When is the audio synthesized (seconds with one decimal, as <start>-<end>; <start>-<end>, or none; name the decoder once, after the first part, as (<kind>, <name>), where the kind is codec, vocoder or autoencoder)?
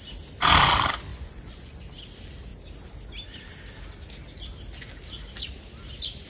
1.1-1.8 (vocoder, Vocos)